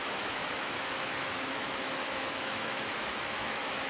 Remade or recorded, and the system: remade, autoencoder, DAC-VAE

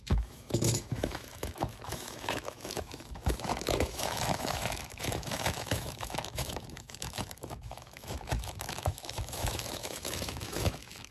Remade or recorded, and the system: remade, autoencoder, DAC-VAE